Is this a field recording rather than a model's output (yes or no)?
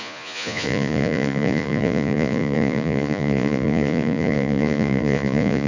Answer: no